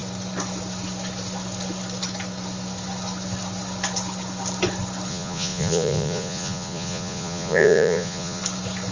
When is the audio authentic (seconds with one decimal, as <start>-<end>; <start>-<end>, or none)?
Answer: 0.0-5.1; 8.4-8.9

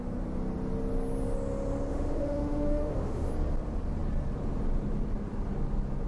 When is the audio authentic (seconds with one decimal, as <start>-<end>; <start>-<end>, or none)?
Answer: 0.0-1.9; 3.3-6.1

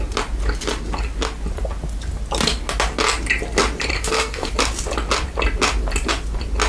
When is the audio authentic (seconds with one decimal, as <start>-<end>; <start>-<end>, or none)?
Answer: 0.0-3.9; 4.5-6.7

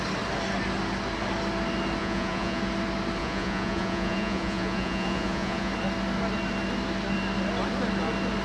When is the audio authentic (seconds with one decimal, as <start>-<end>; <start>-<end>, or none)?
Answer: 0.0-2.0; 2.6-3.2; 5.7-8.4